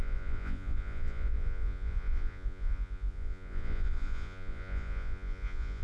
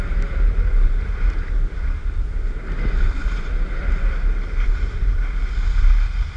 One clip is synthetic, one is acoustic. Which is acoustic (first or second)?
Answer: second